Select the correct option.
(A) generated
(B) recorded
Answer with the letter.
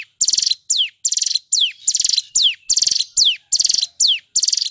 B